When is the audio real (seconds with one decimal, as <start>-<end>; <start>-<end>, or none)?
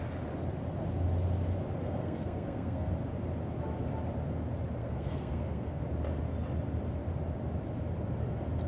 0.0-2.0; 2.9-4.8; 5.8-8.7